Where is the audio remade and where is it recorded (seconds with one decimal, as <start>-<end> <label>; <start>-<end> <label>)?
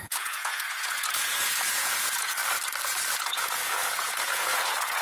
0.0-2.4 remade; 2.4-3.2 recorded; 3.2-5.0 remade